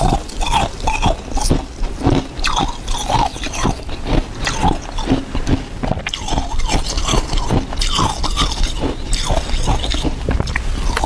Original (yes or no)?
yes